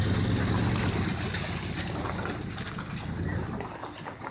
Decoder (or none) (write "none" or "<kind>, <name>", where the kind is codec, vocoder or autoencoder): none